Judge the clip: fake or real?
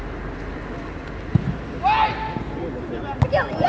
real